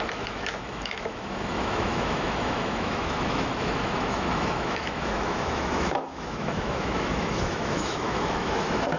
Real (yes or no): no